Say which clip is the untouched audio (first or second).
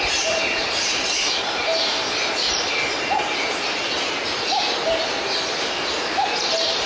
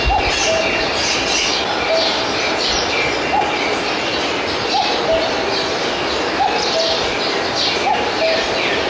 second